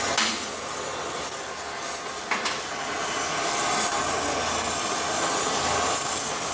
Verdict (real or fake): real